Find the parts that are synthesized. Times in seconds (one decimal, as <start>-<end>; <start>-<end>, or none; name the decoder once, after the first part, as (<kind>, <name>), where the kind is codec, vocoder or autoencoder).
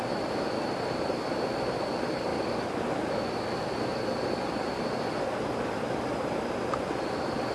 none